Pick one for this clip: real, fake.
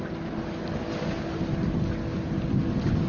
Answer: real